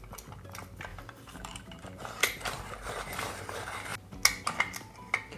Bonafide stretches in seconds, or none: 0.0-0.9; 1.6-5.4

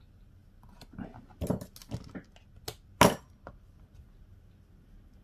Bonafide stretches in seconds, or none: 0.0-5.2

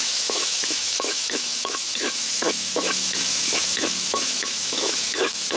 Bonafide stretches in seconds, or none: none

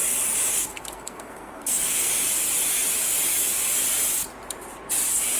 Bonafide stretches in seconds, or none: 0.0-0.5; 2.1-5.4

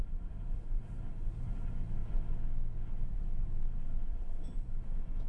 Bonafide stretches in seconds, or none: 2.0-3.0